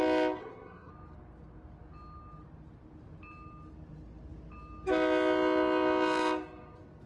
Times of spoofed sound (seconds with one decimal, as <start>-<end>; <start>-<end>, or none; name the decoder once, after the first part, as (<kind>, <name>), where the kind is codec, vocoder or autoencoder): 0.4-0.9 (codec, SNAC)